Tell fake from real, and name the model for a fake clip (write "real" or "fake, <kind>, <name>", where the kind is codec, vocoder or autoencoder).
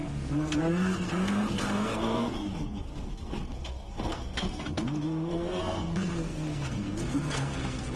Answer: fake, codec, SNAC